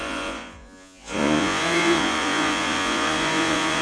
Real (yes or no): no